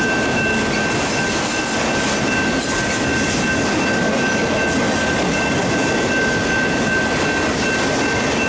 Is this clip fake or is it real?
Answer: real